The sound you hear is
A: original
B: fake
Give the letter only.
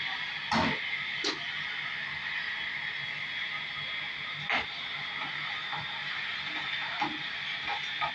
A